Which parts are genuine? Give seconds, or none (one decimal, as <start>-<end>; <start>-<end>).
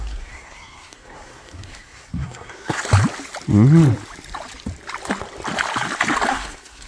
2.8-6.3